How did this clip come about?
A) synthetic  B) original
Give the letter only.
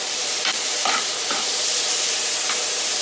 A